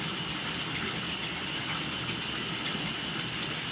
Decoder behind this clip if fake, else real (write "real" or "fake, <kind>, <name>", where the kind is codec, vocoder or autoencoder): real